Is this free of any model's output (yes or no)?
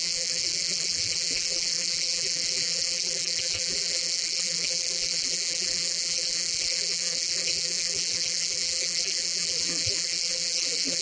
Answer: no